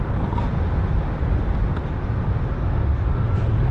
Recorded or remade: recorded